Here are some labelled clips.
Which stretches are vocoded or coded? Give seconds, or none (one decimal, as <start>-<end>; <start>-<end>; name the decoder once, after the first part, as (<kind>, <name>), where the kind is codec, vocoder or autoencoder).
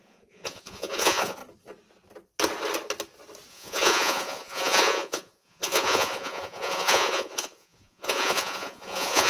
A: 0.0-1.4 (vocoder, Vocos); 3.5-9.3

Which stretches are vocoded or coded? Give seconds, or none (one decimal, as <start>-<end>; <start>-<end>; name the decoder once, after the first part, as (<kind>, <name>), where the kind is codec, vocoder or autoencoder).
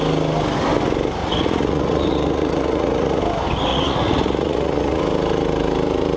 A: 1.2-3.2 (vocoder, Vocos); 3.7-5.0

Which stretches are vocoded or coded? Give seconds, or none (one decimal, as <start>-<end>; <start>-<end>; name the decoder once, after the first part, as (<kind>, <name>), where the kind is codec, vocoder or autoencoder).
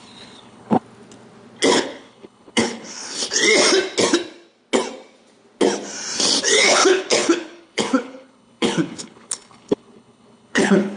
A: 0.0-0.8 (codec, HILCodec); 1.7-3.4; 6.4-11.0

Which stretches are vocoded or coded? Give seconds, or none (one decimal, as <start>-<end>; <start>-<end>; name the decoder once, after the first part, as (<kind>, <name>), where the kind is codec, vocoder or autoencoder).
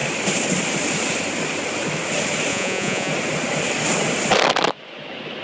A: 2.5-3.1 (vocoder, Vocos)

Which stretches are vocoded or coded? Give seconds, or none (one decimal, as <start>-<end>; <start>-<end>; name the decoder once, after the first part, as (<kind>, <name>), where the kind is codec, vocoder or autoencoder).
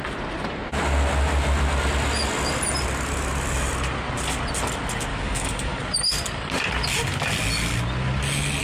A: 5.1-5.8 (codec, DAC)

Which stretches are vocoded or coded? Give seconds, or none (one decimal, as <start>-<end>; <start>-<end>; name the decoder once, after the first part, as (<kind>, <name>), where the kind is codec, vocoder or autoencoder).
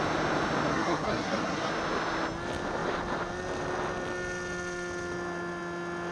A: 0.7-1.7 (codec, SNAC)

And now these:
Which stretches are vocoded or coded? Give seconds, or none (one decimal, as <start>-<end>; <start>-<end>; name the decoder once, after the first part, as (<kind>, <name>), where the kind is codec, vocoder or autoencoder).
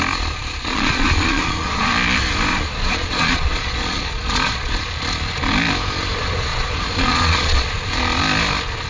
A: 0.6-1.9 (vocoder, Vocos); 2.5-4.8; 6.5-7.7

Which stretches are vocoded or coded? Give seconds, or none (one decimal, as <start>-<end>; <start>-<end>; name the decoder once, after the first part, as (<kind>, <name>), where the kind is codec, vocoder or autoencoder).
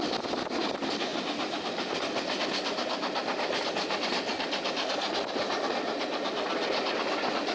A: none